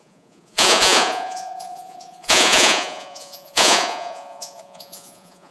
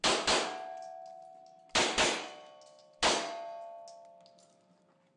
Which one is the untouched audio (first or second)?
second